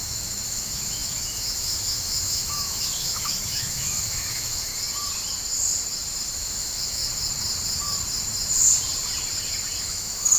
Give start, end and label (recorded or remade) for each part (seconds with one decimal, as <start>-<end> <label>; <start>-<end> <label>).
0.0-4.7 remade; 4.7-6.4 recorded; 6.4-7.0 remade; 7.0-9.8 recorded; 9.8-10.4 remade